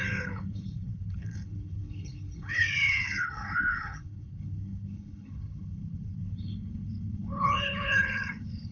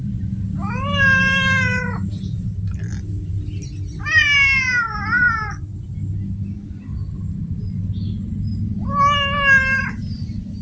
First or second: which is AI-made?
first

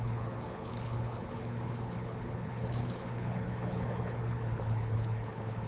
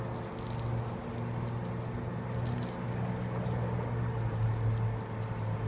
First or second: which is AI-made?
first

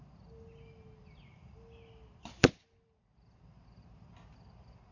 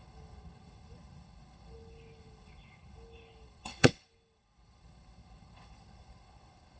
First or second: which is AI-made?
second